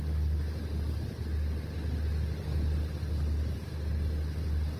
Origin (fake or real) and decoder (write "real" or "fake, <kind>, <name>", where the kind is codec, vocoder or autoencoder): real